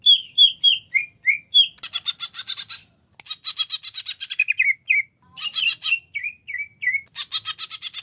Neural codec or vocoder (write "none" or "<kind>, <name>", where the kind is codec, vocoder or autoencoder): none